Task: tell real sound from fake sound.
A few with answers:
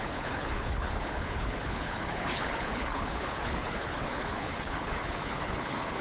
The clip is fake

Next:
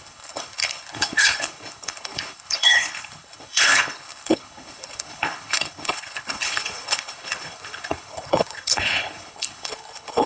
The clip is fake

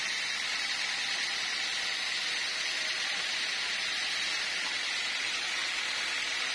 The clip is real